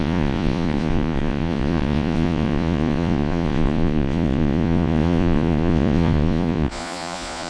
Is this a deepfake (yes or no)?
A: yes